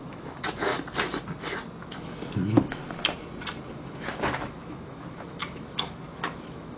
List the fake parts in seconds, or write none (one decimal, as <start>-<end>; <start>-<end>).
0.0-0.7; 1.8-2.8; 3.7-6.8